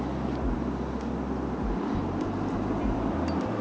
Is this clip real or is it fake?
real